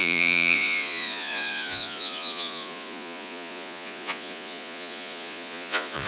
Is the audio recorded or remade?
remade